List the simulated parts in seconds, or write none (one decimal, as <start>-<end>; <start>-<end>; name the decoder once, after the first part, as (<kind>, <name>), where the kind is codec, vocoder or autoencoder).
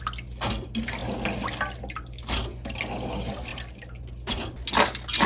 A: none